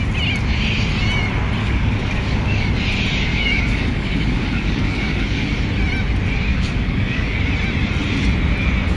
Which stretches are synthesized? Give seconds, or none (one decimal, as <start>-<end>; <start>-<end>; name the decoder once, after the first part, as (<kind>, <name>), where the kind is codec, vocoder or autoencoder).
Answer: 1.6-2.7 (codec, DAC); 3.3-5.6; 6.5-7.4